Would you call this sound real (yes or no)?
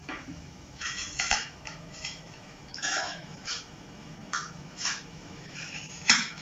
no